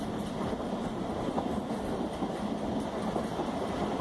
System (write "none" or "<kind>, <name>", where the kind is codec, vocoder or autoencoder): none